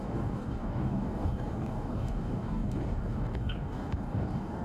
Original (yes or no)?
no